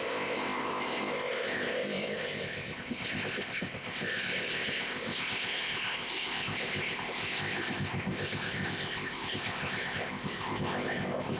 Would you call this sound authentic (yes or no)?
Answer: no